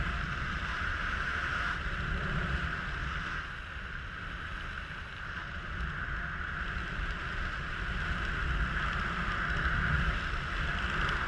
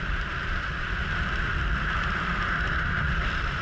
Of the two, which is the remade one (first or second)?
second